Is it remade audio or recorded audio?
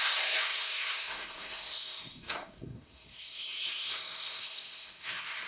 remade